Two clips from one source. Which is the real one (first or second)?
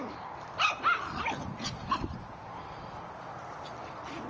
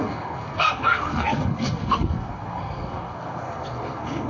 first